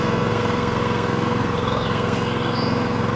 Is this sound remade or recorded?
remade